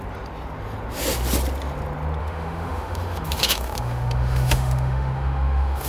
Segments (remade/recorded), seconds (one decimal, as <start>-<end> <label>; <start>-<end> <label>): 0.0-2.2 recorded; 2.2-5.9 remade